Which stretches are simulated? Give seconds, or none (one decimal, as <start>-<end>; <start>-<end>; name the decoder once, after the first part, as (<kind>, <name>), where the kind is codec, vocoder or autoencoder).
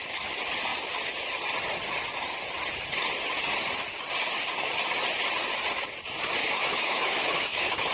6.4-7.9 (autoencoder, DAC-VAE)